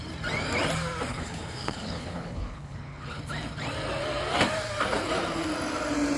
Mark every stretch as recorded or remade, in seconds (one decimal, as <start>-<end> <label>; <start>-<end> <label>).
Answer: 0.0-1.1 recorded; 1.1-3.2 remade; 3.2-6.2 recorded